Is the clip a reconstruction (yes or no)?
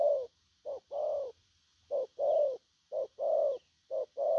no